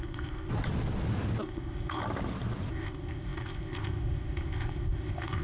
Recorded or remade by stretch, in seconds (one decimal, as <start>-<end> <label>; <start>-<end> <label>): 0.0-0.5 remade; 0.5-1.4 recorded; 1.4-2.0 remade; 2.0-2.7 recorded; 2.7-5.4 remade